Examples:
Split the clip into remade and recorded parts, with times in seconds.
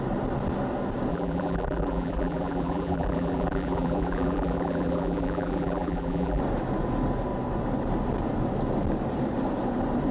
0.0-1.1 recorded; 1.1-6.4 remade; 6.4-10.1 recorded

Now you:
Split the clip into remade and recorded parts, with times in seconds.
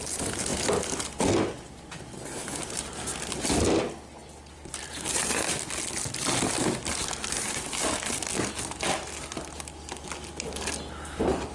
0.0-4.2 recorded; 4.2-4.9 remade; 4.9-11.5 recorded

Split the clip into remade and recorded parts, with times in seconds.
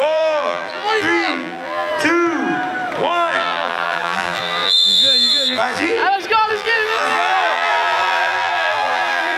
0.0-1.9 remade; 1.9-3.0 recorded; 3.0-6.0 remade; 6.0-6.5 recorded; 6.5-9.4 remade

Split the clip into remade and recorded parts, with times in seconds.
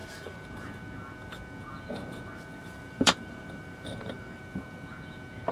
0.0-0.7 remade; 0.7-2.6 recorded; 2.6-4.4 remade; 4.4-5.5 recorded